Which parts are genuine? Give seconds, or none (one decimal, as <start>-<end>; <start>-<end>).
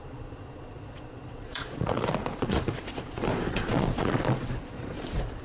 none